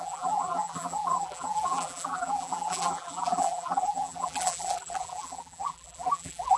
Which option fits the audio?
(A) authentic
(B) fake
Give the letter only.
B